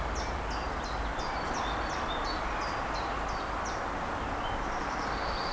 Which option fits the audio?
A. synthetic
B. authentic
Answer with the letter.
B